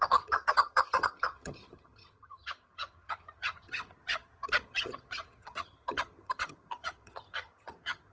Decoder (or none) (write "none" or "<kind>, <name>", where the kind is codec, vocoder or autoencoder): vocoder, HiFi-GAN